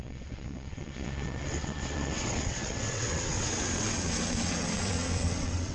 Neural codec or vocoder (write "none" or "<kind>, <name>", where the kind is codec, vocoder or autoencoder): vocoder, WaveNeXt